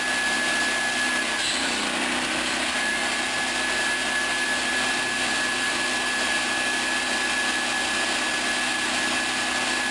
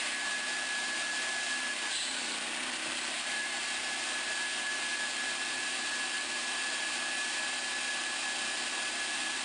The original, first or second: first